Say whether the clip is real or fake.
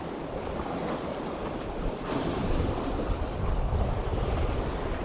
fake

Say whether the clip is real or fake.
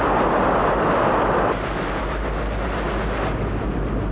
real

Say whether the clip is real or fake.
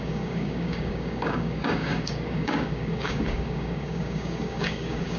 fake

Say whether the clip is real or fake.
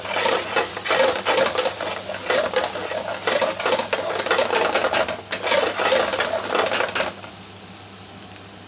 real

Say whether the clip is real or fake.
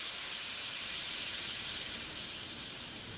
fake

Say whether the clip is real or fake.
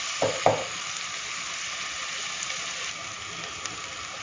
real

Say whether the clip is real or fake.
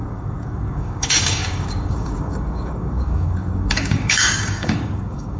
fake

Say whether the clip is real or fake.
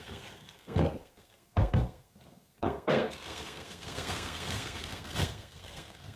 fake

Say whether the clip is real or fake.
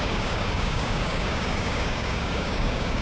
fake